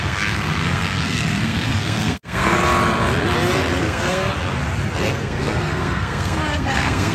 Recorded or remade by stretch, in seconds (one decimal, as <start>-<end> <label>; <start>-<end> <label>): 0.0-2.6 remade; 2.6-3.8 recorded; 3.8-4.3 remade; 4.3-5.0 recorded; 5.0-7.1 remade